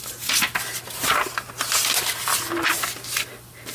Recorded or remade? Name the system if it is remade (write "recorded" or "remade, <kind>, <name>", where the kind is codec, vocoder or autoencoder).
recorded